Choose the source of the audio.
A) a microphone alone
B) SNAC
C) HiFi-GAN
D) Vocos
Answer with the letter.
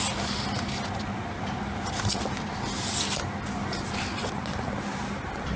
A